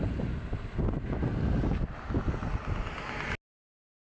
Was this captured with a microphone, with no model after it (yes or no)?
yes